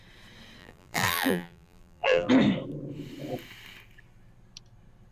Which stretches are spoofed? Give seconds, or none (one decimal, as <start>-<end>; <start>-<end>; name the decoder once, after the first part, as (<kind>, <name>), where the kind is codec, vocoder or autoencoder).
0.6-2.3 (vocoder, BigVGAN v2)